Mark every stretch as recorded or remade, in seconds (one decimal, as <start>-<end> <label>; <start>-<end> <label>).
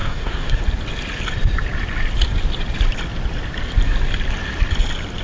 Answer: 0.0-0.6 remade; 0.6-5.2 recorded